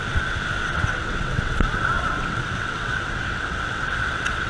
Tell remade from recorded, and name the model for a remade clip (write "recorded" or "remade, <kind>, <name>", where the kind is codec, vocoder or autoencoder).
remade, vocoder, WaveNeXt